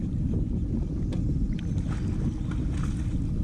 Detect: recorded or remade recorded